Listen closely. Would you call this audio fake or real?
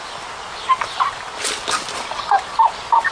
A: real